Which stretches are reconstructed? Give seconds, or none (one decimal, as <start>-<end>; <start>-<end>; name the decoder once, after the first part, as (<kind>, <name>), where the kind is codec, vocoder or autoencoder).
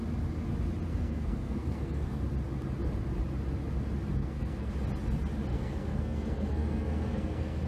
0.9-2.2 (codec, SNAC); 4.2-4.7; 5.5-7.7